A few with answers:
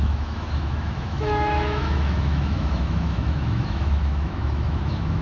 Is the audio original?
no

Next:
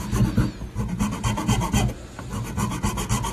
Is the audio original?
yes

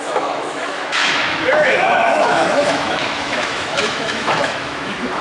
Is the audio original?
no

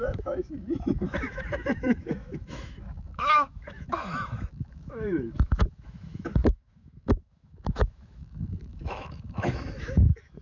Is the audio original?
no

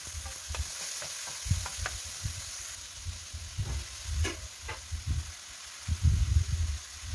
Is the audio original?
yes